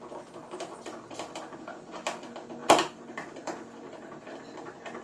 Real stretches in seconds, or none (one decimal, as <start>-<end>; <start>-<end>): 0.0-0.4; 1.4-2.6; 4.4-5.0